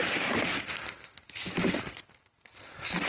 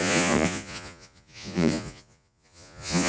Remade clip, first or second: second